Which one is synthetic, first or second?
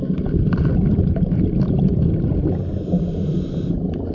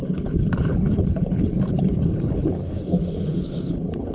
second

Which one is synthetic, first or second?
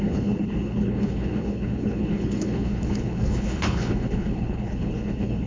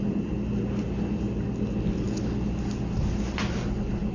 first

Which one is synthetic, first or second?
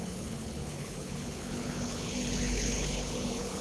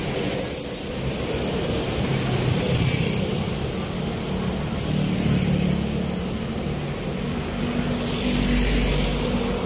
first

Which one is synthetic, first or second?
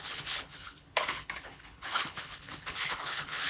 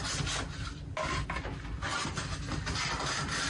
first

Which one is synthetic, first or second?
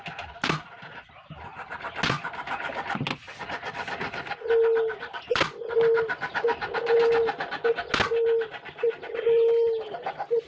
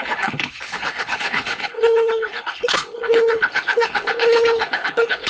second